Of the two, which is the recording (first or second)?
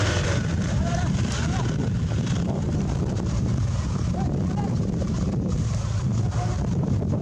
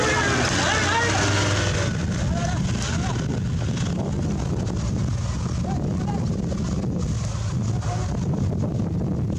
second